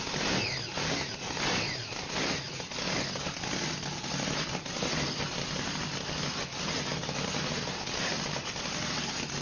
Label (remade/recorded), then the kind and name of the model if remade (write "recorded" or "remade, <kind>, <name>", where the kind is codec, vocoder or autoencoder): recorded